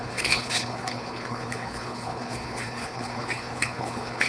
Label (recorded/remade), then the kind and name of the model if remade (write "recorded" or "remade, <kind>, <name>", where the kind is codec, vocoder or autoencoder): remade, codec, HILCodec